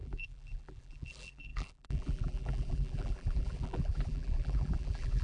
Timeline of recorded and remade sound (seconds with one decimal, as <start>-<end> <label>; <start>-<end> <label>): 0.0-5.2 remade